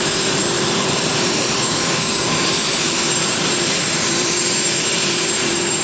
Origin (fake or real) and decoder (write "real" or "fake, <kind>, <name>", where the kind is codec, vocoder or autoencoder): fake, vocoder, BigVGAN v2